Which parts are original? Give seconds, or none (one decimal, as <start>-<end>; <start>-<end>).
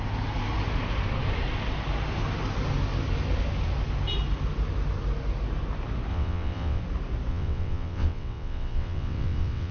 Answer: 0.0-6.1; 6.8-7.3